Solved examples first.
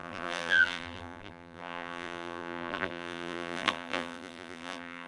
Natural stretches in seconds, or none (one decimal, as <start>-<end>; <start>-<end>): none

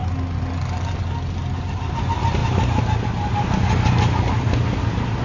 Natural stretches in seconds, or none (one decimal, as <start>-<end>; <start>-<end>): 0.0-5.2

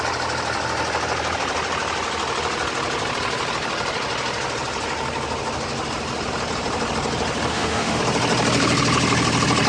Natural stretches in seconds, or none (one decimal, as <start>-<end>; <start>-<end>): 0.0-7.5; 8.0-9.7

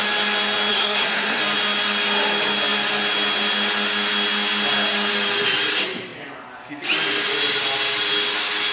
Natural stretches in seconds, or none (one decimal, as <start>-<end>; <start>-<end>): 0.0-0.7; 1.4-8.7